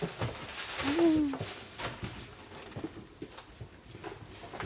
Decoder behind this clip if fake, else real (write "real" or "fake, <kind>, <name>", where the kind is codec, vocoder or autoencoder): real